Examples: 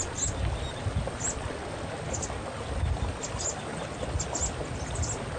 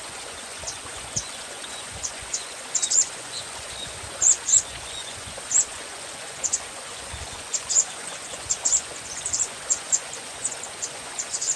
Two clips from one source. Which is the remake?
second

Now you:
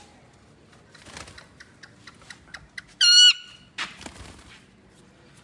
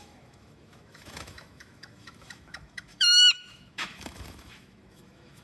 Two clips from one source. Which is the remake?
second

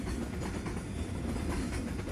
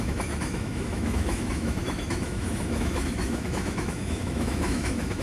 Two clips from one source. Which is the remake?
second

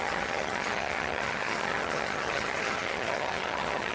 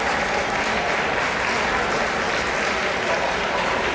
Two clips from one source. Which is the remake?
first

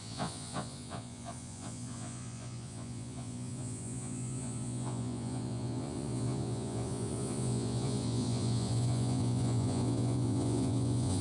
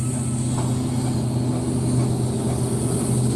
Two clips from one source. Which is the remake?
first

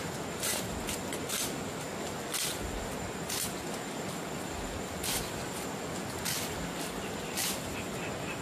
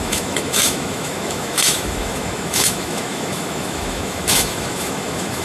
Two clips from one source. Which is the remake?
second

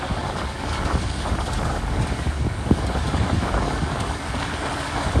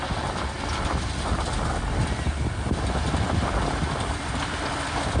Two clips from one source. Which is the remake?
first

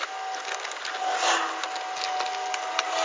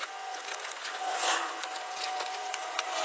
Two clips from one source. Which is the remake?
second